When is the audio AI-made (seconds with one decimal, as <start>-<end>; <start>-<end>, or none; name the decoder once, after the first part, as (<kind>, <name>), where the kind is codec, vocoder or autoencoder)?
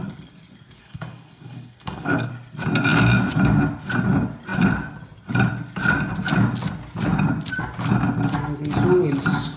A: 0.8-2.3 (codec, SNAC)